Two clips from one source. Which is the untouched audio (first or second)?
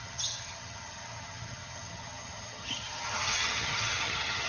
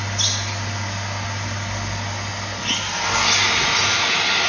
second